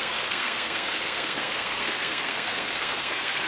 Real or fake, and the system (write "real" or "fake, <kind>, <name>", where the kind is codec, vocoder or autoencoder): fake, codec, SNAC